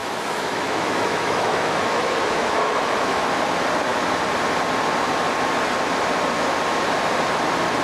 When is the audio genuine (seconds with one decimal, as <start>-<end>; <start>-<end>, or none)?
3.3-7.8